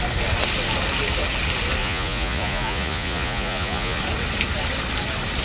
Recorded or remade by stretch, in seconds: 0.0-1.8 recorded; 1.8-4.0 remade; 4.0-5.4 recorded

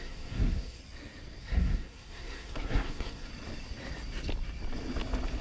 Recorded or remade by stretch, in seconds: 0.0-0.8 remade; 0.8-1.4 recorded; 1.4-3.3 remade; 3.3-5.4 recorded